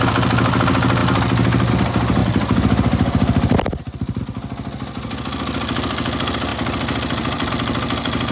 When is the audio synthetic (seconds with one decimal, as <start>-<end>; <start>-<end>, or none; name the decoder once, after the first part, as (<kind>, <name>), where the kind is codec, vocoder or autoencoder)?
2.2-4.2 (vocoder, BigVGAN v2); 6.5-7.5